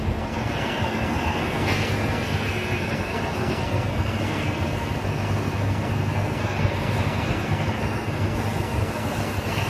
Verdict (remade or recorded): remade